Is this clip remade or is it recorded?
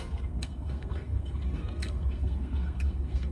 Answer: remade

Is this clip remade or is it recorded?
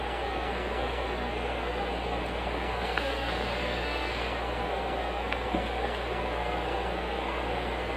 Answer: remade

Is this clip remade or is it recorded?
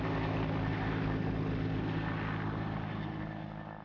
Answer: recorded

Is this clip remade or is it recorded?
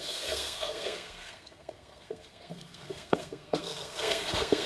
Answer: remade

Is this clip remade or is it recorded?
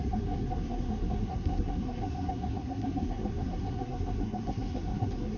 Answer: remade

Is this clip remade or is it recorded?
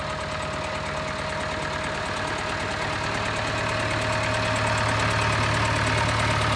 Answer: recorded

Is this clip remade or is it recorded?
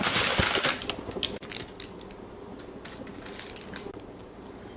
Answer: recorded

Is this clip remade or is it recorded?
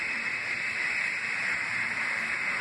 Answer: recorded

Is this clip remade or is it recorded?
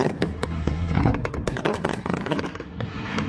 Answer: remade